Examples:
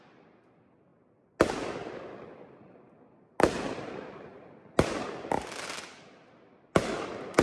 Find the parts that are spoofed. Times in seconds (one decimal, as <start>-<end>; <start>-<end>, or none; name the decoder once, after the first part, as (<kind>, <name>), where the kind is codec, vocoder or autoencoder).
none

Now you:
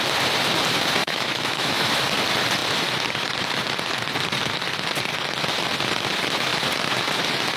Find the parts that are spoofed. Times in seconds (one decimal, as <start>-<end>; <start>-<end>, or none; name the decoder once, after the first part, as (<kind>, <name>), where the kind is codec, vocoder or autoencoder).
1.0-1.9 (autoencoder, DAC-VAE)

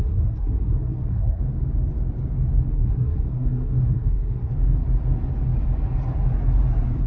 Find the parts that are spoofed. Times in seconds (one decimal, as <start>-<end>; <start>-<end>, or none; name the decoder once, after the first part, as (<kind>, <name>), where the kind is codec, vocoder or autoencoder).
0.0-1.4 (codec, SNAC); 2.7-4.5

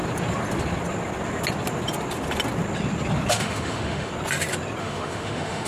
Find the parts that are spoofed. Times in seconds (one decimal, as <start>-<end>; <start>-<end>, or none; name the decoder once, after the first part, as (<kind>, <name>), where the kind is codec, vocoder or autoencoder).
3.3-4.1 (autoencoder, DAC-VAE); 4.8-5.7

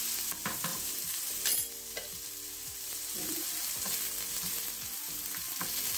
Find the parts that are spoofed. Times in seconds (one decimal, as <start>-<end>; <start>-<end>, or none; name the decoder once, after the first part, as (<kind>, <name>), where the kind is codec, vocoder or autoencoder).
0.7-4.3 (vocoder, BigVGAN v2)

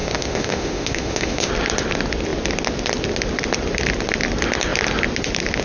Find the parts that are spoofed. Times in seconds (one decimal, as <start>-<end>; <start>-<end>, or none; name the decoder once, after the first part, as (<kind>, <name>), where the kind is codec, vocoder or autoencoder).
0.0-1.5 (autoencoder, DAC-VAE)